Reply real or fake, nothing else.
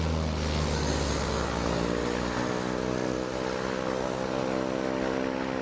real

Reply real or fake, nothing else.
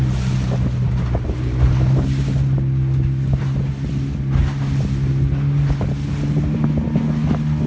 real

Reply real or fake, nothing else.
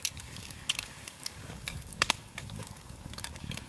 fake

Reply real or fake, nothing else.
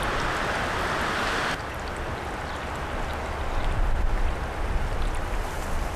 real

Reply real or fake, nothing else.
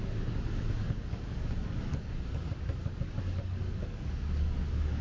fake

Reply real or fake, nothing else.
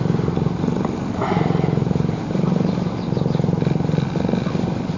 real